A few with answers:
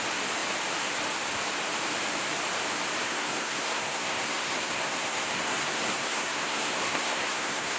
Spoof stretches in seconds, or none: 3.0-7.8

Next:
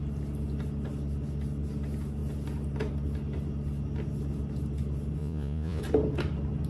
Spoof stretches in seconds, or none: 5.2-5.8